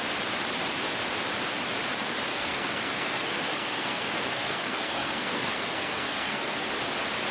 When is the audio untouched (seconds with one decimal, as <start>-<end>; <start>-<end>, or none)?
0.0-2.3; 6.7-7.3